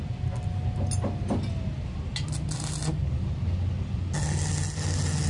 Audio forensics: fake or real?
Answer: real